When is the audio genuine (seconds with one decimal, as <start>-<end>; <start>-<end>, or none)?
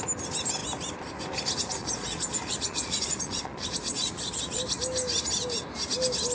0.0-1.8; 4.6-6.3